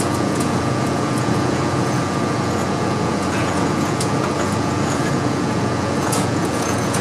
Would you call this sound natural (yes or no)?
no